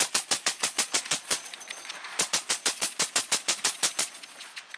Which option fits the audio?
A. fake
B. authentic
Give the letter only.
A